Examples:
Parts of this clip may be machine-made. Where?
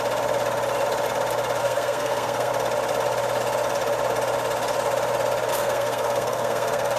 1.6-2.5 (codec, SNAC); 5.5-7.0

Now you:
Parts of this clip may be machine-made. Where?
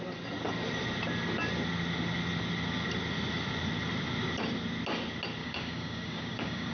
5.4-6.7 (codec, DAC)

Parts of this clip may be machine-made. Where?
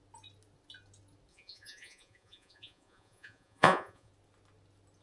1.3-4.1 (vocoder, Vocos)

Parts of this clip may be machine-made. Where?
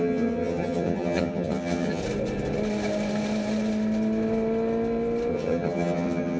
0.0-2.0 (vocoder, HiFi-GAN); 5.3-6.4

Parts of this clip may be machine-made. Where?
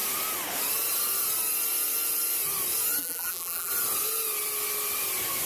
3.0-3.7 (vocoder, BigVGAN v2)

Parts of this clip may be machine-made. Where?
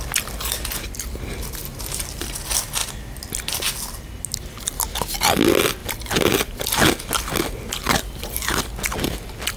none